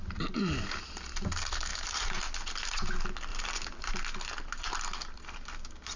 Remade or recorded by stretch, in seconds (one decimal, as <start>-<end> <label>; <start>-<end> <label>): 0.0-1.7 recorded; 1.7-2.2 remade; 2.2-3.3 recorded; 3.3-3.9 remade; 3.9-6.0 recorded